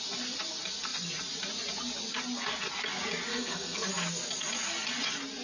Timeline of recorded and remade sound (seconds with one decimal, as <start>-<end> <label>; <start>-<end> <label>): 0.0-3.3 recorded; 3.3-3.9 remade; 3.9-5.4 recorded